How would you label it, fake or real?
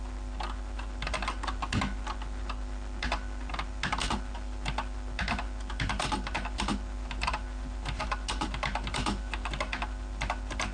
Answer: real